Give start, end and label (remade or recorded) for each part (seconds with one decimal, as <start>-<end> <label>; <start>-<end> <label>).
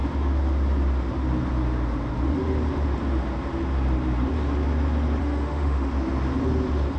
0.0-5.2 recorded; 5.2-5.9 remade; 5.9-7.0 recorded